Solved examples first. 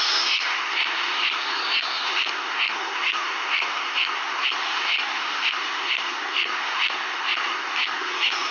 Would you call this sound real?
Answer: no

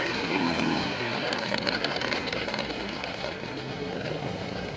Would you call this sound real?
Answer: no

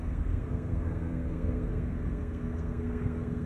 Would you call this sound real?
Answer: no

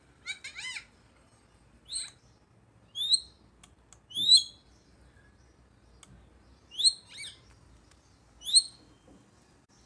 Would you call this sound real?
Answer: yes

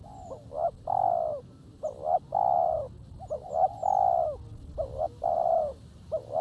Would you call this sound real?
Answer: yes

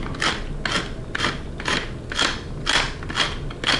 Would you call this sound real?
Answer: yes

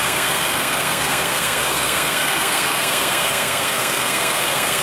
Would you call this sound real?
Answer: no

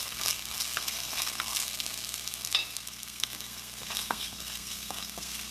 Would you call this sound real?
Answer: no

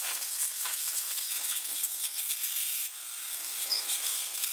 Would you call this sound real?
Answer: no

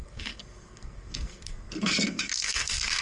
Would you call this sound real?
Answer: no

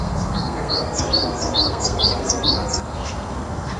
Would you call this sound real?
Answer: no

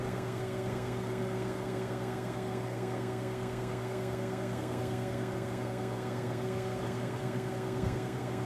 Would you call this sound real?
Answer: no